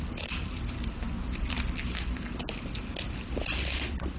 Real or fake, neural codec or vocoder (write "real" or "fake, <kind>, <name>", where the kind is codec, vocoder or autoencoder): real